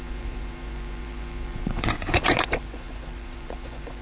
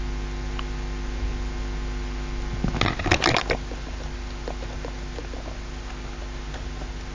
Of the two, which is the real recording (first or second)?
second